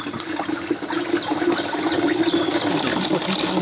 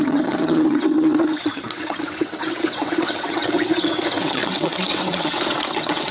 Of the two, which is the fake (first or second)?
second